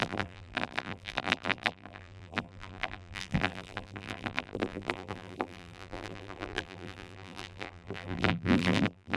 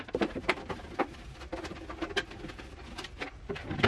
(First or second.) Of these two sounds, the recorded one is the second